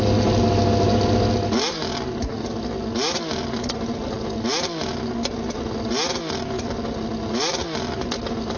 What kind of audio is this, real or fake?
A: real